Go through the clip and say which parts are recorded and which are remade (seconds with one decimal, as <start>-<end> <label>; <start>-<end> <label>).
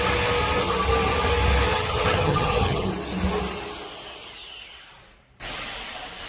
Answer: 0.0-1.7 recorded; 1.7-2.9 remade; 2.9-6.3 recorded